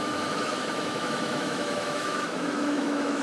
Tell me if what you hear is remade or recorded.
remade